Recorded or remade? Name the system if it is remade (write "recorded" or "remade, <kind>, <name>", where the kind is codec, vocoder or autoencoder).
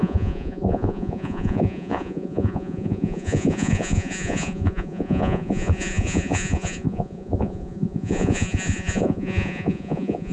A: remade, vocoder, Vocos